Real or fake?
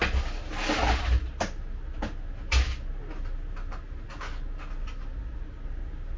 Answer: real